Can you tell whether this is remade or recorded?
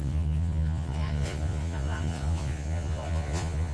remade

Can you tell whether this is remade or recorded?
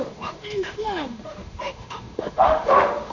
remade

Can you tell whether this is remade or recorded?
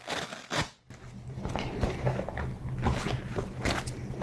recorded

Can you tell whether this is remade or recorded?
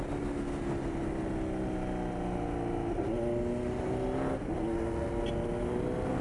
recorded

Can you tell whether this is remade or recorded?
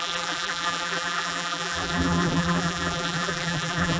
remade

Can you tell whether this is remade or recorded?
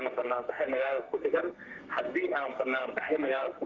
remade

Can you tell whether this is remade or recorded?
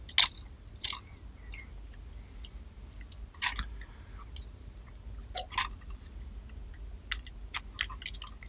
recorded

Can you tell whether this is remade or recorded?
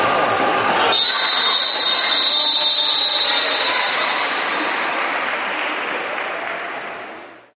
recorded